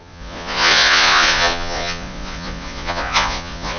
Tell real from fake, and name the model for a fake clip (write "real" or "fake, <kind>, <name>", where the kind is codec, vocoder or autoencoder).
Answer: fake, vocoder, Vocos